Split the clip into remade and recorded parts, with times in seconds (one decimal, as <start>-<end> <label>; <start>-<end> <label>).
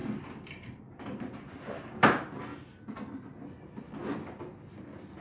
0.0-0.8 remade; 0.8-5.2 recorded